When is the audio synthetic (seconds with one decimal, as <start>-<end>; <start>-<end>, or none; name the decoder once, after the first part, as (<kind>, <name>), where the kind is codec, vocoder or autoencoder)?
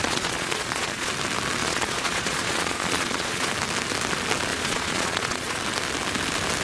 0.0-1.1 (vocoder, Vocos); 1.6-3.5; 4.5-5.6